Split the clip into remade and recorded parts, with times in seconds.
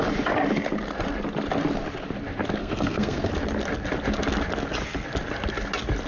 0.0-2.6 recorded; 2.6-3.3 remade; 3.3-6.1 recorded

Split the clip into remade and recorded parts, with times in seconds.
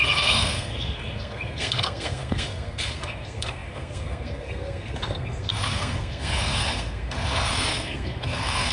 0.0-8.7 remade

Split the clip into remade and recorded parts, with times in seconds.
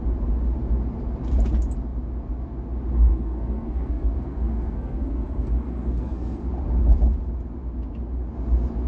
0.0-3.1 recorded; 3.1-6.5 remade; 6.5-8.9 recorded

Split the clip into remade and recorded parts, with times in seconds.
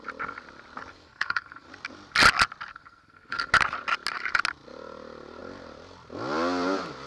0.0-0.9 recorded; 0.9-1.7 remade; 1.7-2.7 recorded; 2.7-3.5 remade; 3.5-7.1 recorded